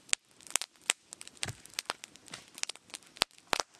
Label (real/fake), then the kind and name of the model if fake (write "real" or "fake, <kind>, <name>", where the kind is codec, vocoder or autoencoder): real